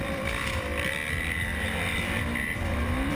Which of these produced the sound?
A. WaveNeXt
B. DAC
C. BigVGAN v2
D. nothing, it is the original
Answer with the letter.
C